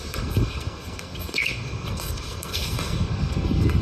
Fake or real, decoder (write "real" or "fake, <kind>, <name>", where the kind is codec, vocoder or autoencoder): fake, codec, SNAC